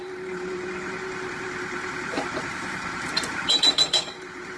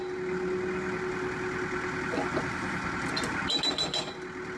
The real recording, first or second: second